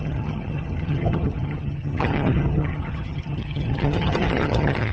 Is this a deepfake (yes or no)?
yes